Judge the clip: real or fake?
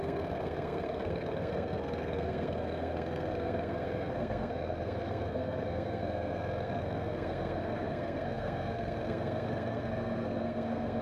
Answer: fake